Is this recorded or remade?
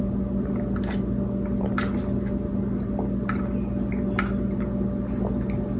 recorded